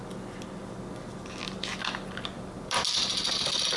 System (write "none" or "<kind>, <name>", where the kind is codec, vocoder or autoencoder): none